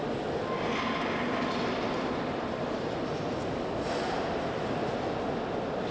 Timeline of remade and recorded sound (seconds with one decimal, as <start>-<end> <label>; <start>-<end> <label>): 0.0-1.6 recorded; 1.6-3.4 remade; 3.4-5.9 recorded